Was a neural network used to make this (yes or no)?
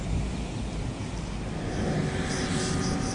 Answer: no